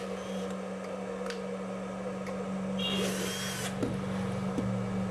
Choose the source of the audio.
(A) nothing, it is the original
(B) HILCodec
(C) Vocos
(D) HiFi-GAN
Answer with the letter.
A